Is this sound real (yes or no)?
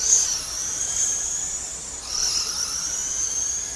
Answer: yes